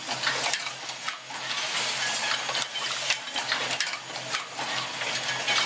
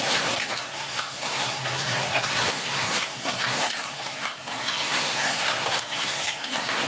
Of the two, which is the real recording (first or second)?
first